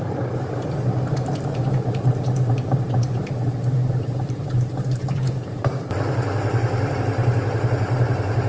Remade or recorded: remade